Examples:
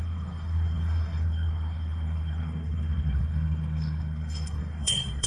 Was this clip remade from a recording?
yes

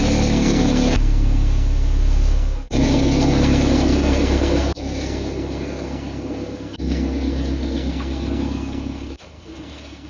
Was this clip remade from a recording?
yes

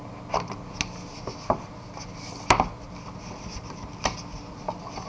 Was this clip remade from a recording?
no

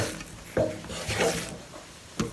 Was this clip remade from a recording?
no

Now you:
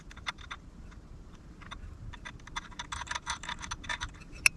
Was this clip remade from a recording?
no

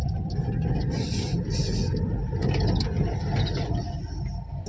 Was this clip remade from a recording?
no